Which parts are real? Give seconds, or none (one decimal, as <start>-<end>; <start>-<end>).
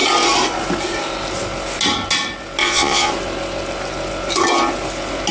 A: 0.0-2.6; 3.1-5.3